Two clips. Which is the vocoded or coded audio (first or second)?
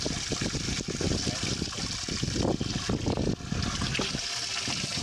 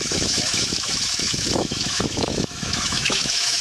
second